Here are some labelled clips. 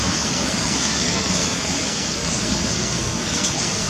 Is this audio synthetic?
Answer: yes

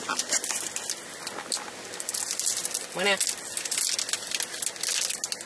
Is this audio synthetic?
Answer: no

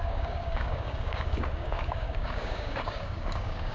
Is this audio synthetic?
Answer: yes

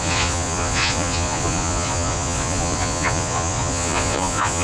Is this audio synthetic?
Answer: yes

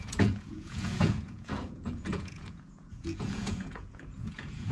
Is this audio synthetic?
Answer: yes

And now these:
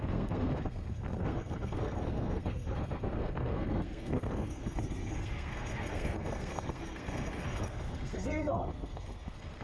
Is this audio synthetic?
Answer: yes